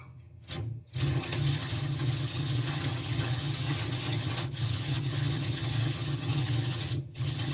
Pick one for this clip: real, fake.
fake